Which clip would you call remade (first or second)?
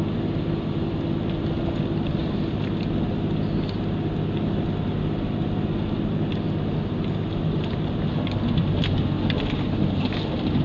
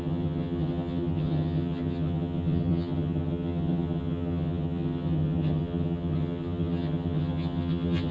second